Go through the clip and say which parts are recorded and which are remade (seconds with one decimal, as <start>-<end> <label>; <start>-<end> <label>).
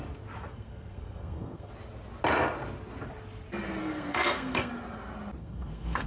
0.0-0.5 recorded; 0.5-1.7 remade; 1.7-3.8 recorded; 3.8-4.7 remade; 4.7-5.4 recorded; 5.4-6.1 remade